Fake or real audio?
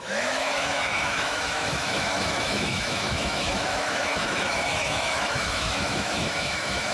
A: fake